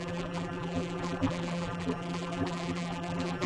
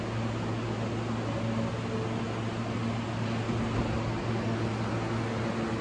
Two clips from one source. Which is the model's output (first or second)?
first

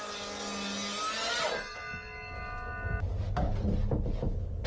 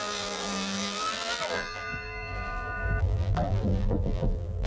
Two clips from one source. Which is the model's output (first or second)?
second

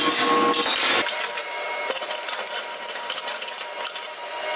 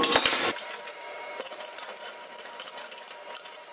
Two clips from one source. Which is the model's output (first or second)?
second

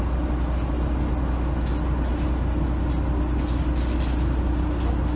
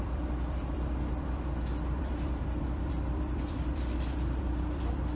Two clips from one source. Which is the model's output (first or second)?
second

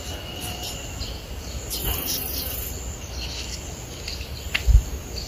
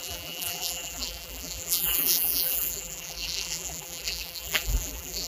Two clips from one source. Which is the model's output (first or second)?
second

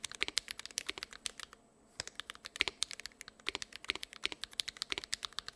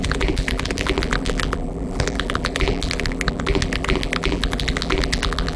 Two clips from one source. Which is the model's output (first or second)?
second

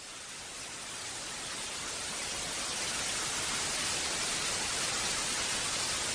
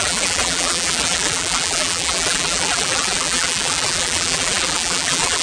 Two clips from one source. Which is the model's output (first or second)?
second